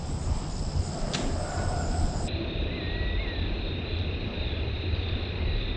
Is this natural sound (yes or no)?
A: yes